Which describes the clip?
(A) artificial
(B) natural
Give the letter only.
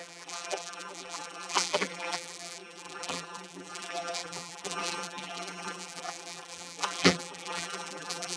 A